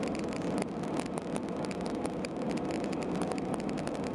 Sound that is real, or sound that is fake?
real